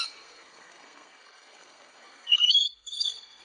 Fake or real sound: fake